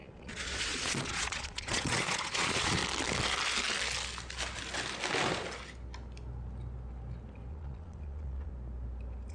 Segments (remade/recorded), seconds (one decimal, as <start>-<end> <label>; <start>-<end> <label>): 0.0-2.8 remade; 2.8-7.5 recorded; 7.5-8.5 remade; 8.5-9.3 recorded